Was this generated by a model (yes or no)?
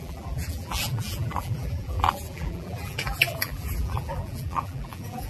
yes